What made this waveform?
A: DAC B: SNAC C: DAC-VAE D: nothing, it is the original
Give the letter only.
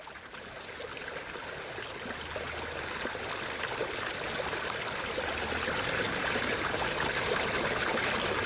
D